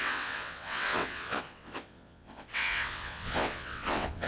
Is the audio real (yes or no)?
no